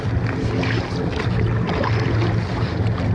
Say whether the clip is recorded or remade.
recorded